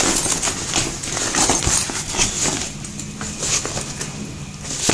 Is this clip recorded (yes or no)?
yes